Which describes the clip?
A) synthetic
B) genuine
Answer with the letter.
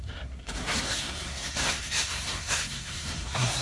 A